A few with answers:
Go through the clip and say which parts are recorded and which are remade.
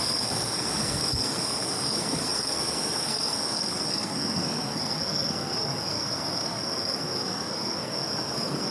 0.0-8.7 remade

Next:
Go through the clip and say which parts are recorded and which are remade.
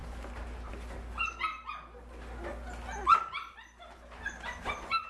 0.0-5.1 recorded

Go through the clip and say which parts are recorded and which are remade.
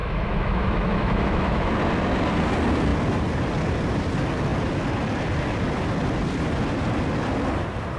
0.0-1.7 remade; 1.7-8.0 recorded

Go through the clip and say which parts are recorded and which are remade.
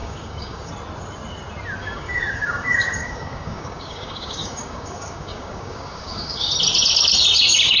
0.0-0.7 remade; 0.7-1.8 recorded; 1.8-6.5 remade; 6.5-7.8 recorded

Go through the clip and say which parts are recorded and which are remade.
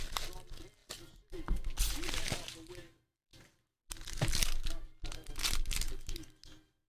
0.0-6.9 recorded